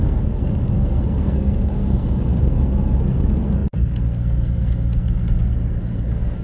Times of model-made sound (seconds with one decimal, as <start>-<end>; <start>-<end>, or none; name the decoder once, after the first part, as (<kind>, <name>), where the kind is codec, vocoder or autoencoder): 0.0-6.4 (codec, SNAC)

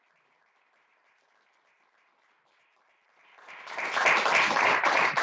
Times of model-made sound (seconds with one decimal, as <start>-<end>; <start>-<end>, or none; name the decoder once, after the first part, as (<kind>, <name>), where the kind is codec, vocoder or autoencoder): none

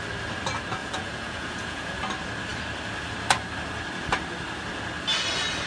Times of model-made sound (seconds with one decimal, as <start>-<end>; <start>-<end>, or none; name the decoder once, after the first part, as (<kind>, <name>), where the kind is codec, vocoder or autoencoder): 0.8-2.0 (vocoder, Vocos)